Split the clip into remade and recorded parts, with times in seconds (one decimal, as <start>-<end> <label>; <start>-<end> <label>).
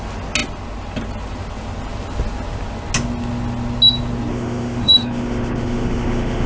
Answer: 0.0-4.3 recorded; 4.3-6.5 remade